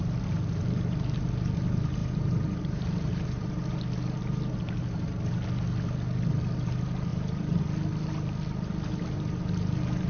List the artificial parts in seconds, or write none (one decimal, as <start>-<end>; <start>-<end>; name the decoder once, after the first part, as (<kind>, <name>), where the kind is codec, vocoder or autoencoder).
2.0-3.5 (vocoder, BigVGAN v2); 7.1-7.6